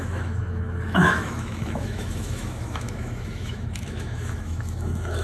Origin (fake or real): fake